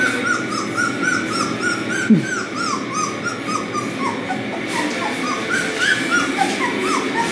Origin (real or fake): real